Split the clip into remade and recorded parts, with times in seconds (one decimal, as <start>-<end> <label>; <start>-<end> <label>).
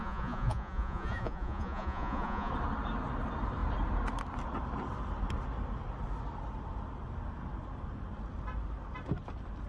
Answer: 0.0-2.5 remade; 2.5-9.7 recorded